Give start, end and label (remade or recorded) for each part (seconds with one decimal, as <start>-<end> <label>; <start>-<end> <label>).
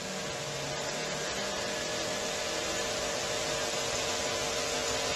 0.0-5.2 recorded